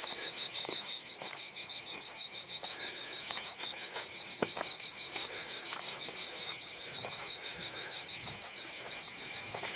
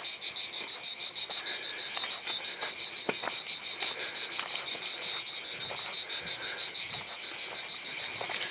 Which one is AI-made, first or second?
first